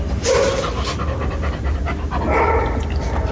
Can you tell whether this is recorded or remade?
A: recorded